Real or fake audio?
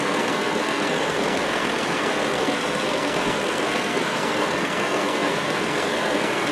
fake